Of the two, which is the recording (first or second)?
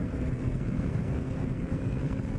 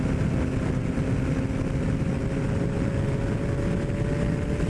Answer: second